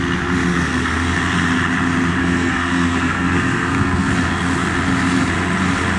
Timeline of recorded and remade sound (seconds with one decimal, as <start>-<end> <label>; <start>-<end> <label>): 0.0-0.5 recorded; 0.5-1.2 remade; 1.2-2.2 recorded; 2.2-4.1 remade; 4.1-6.0 recorded